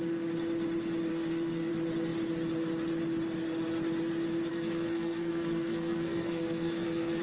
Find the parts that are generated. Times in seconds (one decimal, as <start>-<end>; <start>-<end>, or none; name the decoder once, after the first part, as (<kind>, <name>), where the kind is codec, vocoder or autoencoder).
1.1-1.7 (codec, SNAC); 4.5-7.2